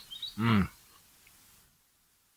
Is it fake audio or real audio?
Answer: real